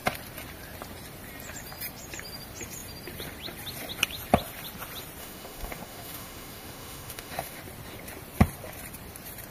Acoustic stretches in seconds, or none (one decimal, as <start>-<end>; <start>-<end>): 0.0-5.2; 7.6-9.5